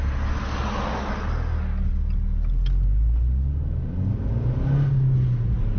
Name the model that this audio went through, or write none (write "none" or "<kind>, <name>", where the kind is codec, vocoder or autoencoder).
none